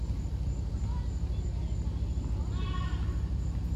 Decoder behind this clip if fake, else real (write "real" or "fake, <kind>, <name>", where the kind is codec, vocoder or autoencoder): real